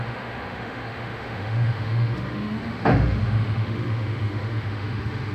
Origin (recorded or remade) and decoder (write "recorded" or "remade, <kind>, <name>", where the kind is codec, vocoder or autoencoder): remade, autoencoder, DAC-VAE